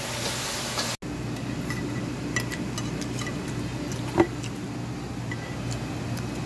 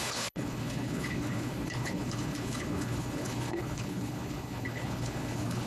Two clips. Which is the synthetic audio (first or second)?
second